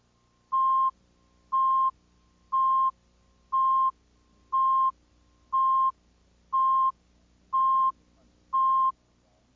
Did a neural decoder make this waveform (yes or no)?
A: no